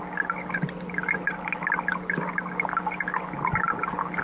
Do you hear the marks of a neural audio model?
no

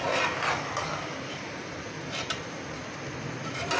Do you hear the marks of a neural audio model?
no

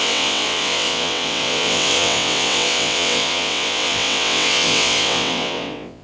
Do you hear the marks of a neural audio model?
yes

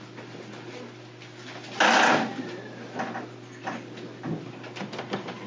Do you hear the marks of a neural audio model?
no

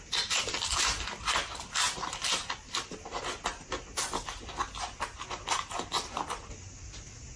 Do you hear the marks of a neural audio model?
no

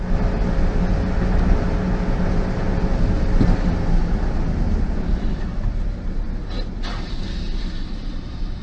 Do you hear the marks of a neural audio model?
no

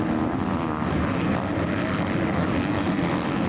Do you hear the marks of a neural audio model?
no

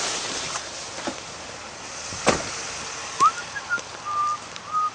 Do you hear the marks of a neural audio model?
no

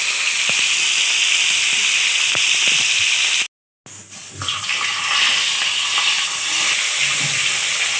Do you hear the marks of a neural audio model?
no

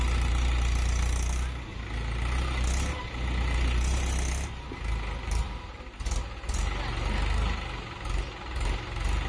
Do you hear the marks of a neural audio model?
no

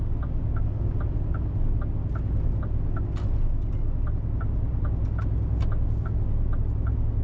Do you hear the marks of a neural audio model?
no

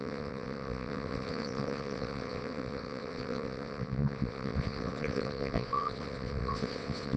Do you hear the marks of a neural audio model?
yes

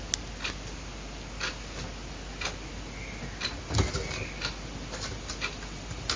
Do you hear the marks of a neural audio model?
no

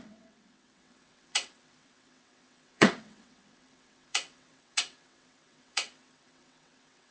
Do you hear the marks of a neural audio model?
yes